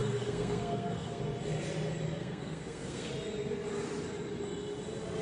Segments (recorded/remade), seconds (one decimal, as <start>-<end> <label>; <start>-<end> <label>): 0.0-1.2 remade; 1.2-2.2 recorded; 2.2-3.1 remade; 3.1-5.2 recorded